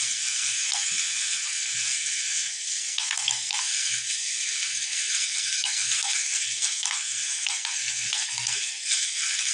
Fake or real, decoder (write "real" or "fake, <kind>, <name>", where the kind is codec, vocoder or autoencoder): fake, codec, SNAC